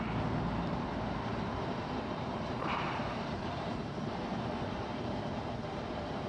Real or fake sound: fake